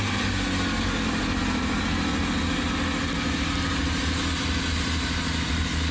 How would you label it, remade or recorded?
recorded